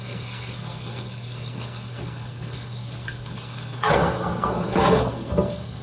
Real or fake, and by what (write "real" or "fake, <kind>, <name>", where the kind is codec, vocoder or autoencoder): fake, codec, SNAC